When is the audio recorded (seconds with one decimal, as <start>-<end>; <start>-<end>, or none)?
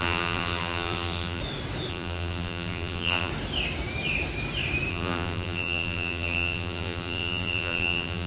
1.4-1.9; 3.3-4.9